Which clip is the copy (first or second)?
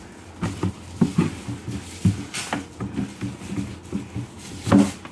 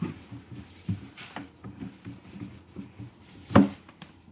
second